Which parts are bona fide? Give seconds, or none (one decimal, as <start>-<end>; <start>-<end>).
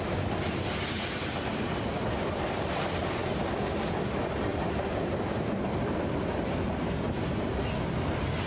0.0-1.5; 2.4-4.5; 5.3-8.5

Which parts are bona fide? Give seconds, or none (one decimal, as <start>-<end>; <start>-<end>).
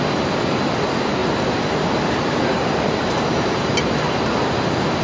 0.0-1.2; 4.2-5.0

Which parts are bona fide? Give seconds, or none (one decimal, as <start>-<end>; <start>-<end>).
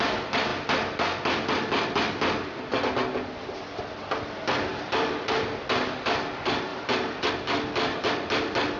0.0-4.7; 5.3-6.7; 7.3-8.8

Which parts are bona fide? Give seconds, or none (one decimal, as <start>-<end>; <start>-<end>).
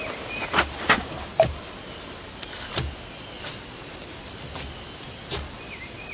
1.3-5.0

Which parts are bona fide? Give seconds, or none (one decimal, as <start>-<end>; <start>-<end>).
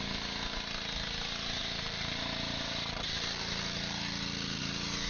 0.0-1.6; 4.6-5.1